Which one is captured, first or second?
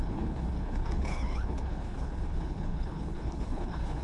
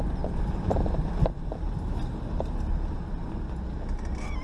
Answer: second